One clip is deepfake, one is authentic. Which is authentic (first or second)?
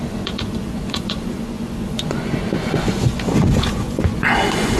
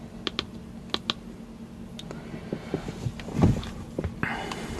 second